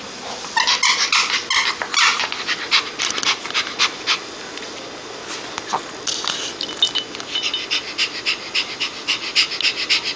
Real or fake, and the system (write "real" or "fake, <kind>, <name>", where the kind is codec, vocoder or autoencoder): real